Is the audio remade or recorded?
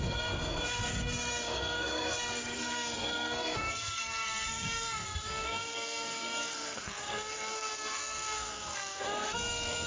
remade